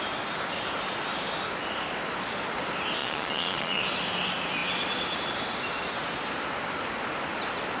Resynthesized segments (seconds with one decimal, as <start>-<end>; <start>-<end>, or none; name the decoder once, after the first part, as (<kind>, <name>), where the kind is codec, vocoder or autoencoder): 3.0-3.8 (vocoder, Vocos)